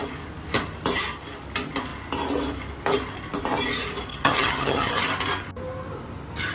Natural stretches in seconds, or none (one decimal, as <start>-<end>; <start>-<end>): 0.0-4.1; 4.9-6.5